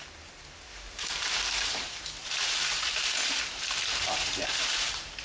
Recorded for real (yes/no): no